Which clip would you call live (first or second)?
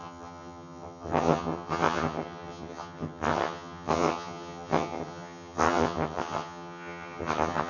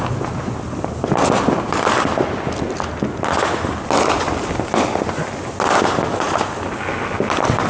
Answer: second